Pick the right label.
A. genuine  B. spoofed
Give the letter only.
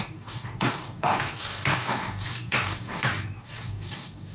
B